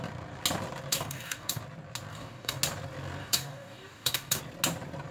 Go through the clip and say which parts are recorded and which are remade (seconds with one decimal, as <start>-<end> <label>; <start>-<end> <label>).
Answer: 0.0-0.9 recorded; 0.9-1.6 remade; 1.6-2.1 recorded; 2.1-2.6 remade; 2.6-3.2 recorded; 3.2-4.4 remade; 4.4-5.1 recorded

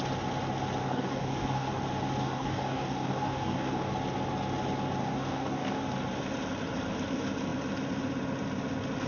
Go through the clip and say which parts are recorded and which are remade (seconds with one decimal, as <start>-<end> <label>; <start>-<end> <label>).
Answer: 0.0-0.8 recorded; 0.8-1.8 remade; 1.8-2.2 recorded; 2.2-3.9 remade; 3.9-5.0 recorded; 5.0-5.8 remade; 5.8-9.1 recorded

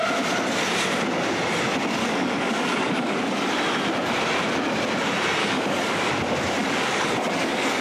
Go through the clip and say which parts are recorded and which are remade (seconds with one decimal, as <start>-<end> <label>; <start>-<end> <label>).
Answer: 0.0-2.0 recorded; 2.0-3.5 remade; 3.5-5.4 recorded; 5.4-6.1 remade; 6.1-6.6 recorded; 6.6-7.8 remade

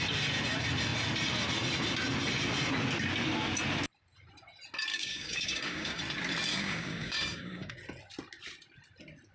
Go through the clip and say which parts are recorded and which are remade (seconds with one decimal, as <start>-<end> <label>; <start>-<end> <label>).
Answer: 0.0-4.9 recorded; 4.9-6.0 remade; 6.0-6.5 recorded; 6.5-7.7 remade; 7.7-9.3 recorded

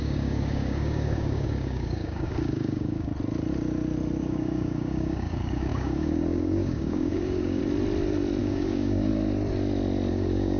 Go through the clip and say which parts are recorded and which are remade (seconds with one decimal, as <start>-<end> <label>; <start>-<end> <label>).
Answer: 0.0-3.1 remade; 3.1-4.2 recorded; 4.2-7.6 remade; 7.6-8.4 recorded; 8.4-9.1 remade; 9.1-10.1 recorded; 10.1-10.6 remade